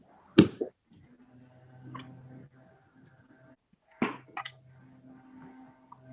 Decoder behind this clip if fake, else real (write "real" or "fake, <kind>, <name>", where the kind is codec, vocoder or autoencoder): real